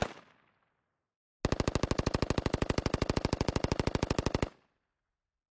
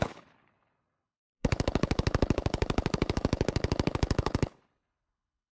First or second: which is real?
first